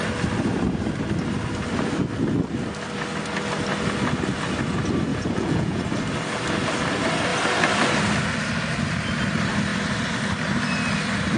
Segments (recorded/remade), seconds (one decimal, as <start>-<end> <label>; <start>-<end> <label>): 0.0-5.1 recorded; 5.1-5.8 remade; 5.8-11.4 recorded

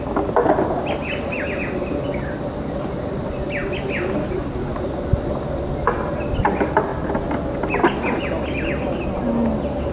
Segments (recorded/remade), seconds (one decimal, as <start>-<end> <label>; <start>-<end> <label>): 0.0-9.9 recorded